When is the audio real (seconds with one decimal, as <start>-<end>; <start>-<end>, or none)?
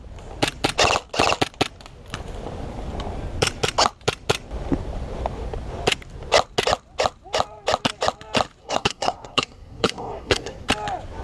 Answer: 0.0-8.6; 10.7-11.2